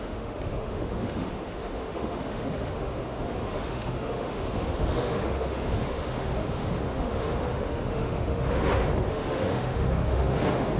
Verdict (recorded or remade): remade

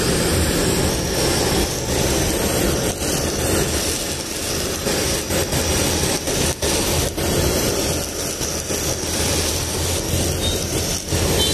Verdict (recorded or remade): recorded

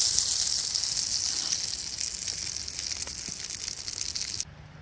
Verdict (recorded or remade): recorded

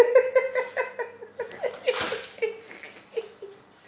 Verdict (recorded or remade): recorded